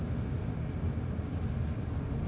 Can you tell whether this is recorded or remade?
recorded